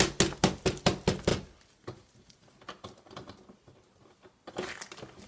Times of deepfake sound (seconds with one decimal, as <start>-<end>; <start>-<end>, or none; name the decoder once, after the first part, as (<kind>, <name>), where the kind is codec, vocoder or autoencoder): none